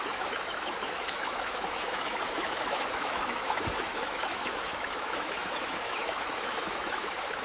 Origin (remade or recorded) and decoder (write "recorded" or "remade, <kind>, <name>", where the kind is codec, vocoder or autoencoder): remade, autoencoder, DAC-VAE